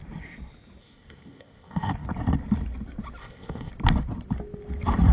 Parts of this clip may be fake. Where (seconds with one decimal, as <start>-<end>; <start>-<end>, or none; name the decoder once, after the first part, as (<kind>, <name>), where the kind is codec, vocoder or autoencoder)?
0.8-1.9 (codec, ZipCodec); 3.2-3.7